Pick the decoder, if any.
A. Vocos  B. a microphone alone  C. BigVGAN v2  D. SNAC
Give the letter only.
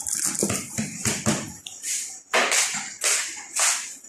B